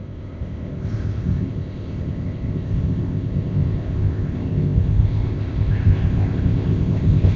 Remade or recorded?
remade